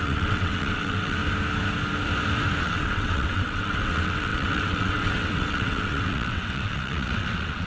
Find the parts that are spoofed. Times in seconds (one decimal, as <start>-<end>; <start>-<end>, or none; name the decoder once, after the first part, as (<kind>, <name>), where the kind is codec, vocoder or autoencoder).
0.0-1.2 (vocoder, WaveNeXt); 2.6-7.7